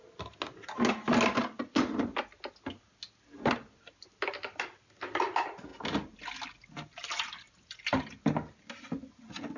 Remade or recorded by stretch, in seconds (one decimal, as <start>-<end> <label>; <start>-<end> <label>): 0.0-9.6 recorded